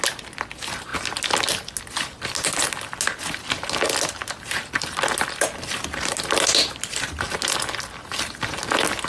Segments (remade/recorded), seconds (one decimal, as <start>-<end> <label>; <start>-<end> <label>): 0.0-9.1 recorded